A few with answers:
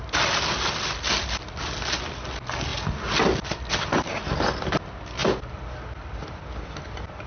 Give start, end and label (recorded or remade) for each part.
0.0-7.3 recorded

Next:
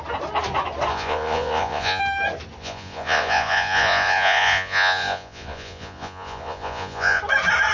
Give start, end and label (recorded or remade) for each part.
0.0-0.9 recorded; 0.9-2.0 remade; 2.0-2.6 recorded; 2.6-7.2 remade; 7.2-7.7 recorded

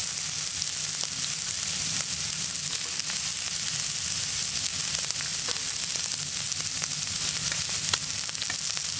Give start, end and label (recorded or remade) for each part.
0.0-9.0 recorded

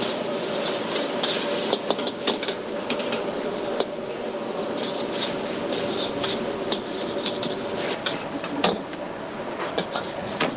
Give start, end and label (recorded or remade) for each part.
0.0-9.3 recorded; 9.3-10.6 remade